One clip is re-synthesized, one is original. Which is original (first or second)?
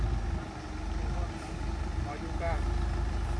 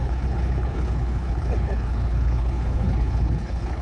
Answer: first